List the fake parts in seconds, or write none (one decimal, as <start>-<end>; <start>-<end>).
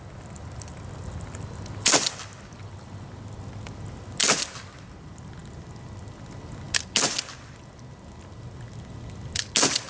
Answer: none